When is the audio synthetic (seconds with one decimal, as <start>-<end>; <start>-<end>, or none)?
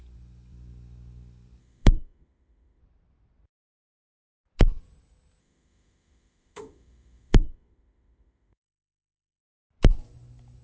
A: 1.6-2.8; 5.4-9.4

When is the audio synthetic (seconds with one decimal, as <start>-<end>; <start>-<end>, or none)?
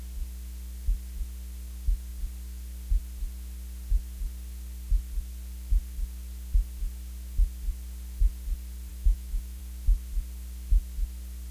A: 8.9-9.6